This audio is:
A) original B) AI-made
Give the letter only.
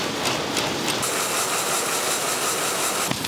A